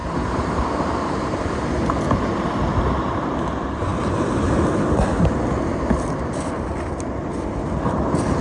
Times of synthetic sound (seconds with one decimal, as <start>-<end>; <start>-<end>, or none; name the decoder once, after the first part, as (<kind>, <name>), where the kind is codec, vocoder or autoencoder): 0.0-1.7 (vocoder, BigVGAN v2)